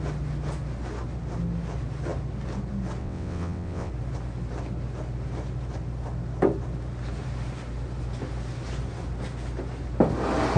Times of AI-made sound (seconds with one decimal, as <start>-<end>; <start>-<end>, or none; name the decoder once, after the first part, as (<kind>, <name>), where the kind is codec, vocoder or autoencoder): 3.0-3.9 (vocoder, WaveNeXt)